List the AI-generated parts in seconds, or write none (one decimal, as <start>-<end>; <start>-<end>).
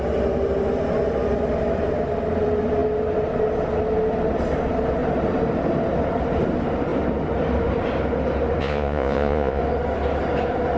8.6-9.6